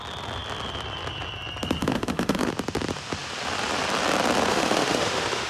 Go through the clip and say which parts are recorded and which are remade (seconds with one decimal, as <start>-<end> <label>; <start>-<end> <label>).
0.0-1.8 recorded; 1.8-2.5 remade; 2.5-4.5 recorded; 4.5-5.5 remade